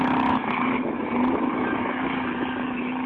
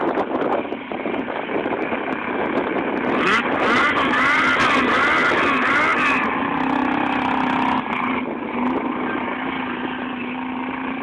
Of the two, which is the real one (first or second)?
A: second